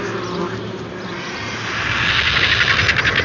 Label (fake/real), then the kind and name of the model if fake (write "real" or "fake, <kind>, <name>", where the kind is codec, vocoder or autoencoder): real